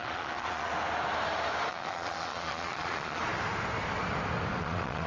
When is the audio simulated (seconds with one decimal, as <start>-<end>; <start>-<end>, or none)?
0.0-0.7; 1.7-3.2; 4.6-5.1